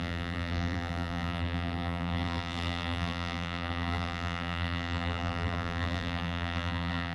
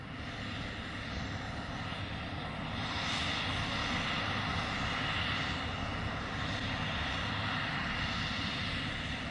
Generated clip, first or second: first